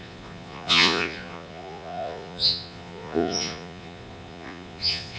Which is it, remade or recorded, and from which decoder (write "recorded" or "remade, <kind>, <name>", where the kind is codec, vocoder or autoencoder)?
remade, vocoder, Vocos